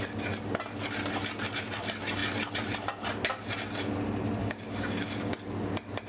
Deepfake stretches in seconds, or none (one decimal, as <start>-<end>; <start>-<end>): 4.4-5.3